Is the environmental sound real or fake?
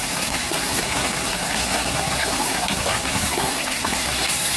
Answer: fake